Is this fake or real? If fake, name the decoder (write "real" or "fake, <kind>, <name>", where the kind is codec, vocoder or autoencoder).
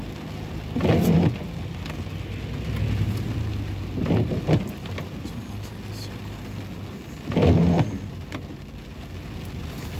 real